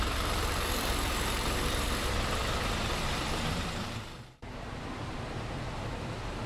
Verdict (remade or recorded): remade